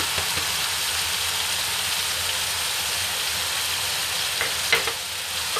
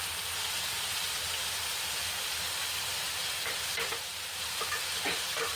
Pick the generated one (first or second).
second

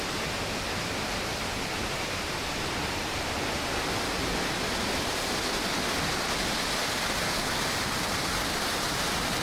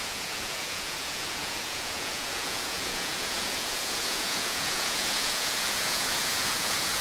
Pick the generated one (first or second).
second